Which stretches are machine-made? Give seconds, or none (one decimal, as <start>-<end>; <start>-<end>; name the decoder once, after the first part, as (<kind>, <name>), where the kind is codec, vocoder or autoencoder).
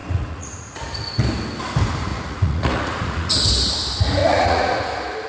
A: 0.0-0.8 (vocoder, Vocos); 2.1-3.3; 4.2-4.8